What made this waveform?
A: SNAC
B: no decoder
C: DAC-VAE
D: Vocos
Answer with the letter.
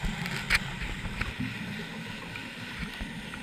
B